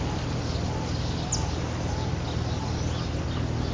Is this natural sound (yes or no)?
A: yes